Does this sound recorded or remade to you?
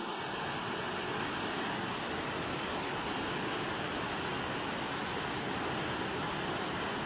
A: recorded